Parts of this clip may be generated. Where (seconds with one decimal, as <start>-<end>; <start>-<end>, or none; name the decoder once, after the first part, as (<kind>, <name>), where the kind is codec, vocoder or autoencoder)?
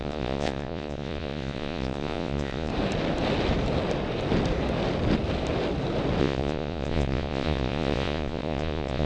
0.0-2.7 (vocoder, Vocos); 6.2-9.1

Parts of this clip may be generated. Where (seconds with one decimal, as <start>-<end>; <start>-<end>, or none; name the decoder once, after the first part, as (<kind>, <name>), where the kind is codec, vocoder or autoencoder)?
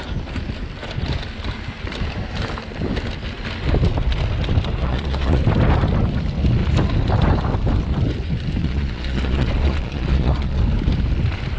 4.8-5.4 (vocoder, Vocos); 8.6-10.6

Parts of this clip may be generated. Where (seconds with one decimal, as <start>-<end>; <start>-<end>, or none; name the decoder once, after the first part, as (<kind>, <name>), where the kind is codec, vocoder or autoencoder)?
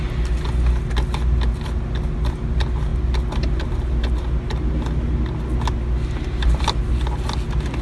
none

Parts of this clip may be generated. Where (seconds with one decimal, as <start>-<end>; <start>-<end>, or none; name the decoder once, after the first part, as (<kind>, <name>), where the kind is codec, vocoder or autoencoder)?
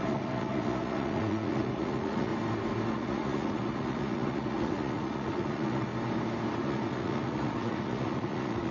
0.0-2.3 (vocoder, Vocos); 2.9-5.9; 6.6-8.7